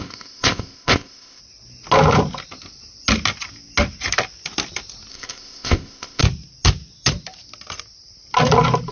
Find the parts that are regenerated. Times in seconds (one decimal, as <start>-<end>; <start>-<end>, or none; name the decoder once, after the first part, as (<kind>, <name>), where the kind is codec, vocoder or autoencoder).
0.0-1.4 (codec, ZipCodec); 5.1-6.2